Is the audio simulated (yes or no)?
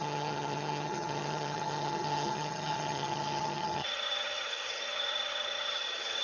yes